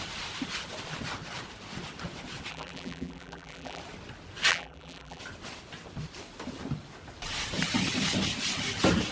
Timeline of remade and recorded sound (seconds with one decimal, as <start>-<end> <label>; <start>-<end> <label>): 0.0-2.5 recorded; 2.5-3.8 remade; 3.8-4.5 recorded; 4.5-5.2 remade; 5.2-9.1 recorded